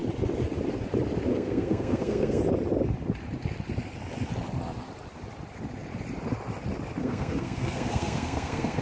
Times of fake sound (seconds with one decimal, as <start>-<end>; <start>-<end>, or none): 1.3-2.4; 7.0-8.8

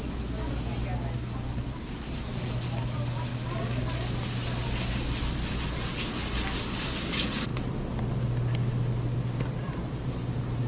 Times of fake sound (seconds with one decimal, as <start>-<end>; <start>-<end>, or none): none

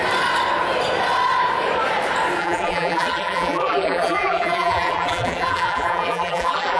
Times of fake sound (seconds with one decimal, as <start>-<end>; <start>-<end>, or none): 2.4-6.8

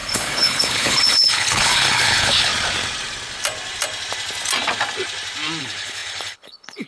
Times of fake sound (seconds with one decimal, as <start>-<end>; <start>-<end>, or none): 0.0-2.5; 5.6-6.9

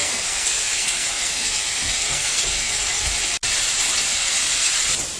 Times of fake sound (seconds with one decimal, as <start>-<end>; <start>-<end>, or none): 0.0-3.1; 4.1-4.7